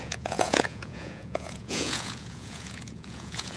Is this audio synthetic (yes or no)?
yes